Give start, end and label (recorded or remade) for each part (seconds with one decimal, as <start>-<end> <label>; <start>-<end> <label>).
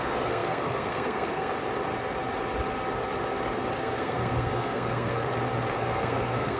0.0-1.5 remade; 1.5-3.8 recorded; 3.8-5.3 remade; 5.3-5.8 recorded; 5.8-6.6 remade